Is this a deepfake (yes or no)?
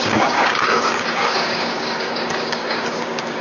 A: yes